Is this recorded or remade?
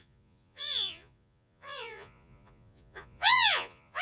remade